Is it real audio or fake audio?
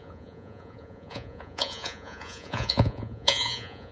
fake